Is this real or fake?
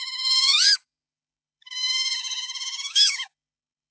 fake